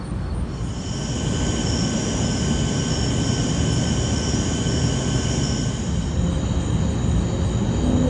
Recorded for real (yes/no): yes